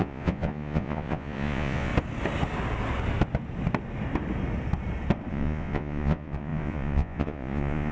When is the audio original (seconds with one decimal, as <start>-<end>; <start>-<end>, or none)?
1.9-5.3

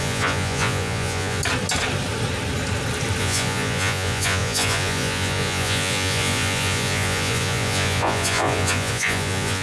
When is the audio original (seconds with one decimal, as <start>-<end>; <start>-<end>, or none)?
1.4-3.2